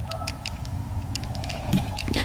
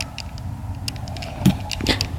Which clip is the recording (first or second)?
second